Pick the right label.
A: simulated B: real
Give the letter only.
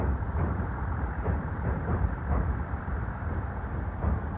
A